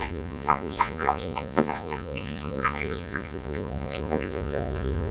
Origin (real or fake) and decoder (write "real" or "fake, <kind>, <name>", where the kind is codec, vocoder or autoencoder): fake, vocoder, Vocos